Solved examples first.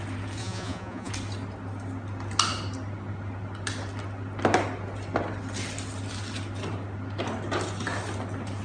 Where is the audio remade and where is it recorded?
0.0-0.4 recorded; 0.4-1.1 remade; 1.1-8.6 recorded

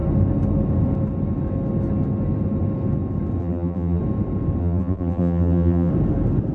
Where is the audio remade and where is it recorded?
0.0-3.4 recorded; 3.4-4.0 remade; 4.0-4.6 recorded; 4.6-5.9 remade; 5.9-6.5 recorded